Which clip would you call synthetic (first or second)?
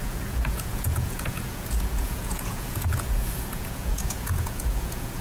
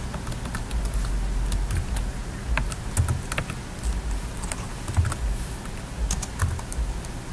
first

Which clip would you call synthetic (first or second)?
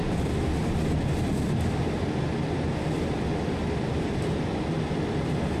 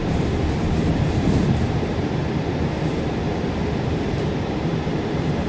second